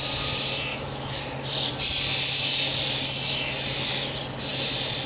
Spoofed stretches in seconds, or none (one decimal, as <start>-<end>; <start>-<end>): 0.7-1.2